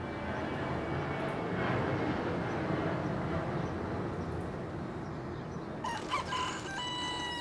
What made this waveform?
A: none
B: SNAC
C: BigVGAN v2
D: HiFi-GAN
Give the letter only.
A